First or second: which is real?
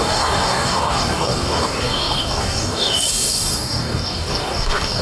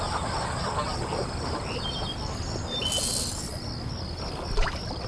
second